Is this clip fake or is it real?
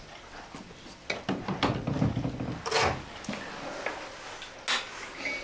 real